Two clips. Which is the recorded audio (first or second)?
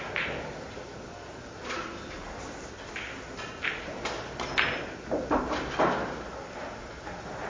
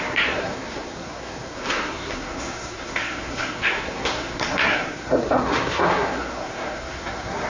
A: first